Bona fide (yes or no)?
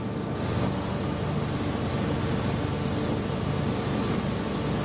yes